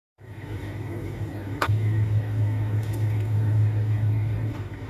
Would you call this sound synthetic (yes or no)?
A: yes